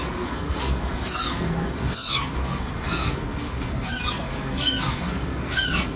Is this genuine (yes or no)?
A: no